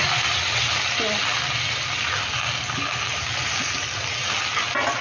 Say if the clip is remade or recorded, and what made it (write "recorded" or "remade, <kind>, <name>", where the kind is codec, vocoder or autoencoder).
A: recorded